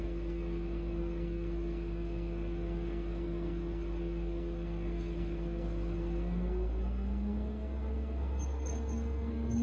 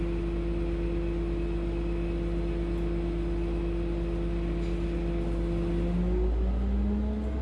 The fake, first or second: first